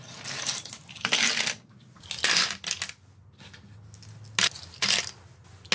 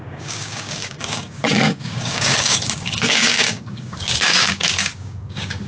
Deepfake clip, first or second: second